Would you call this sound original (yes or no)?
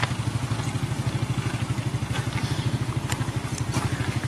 yes